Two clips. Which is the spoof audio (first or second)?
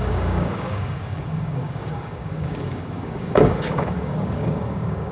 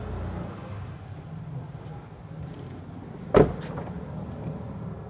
first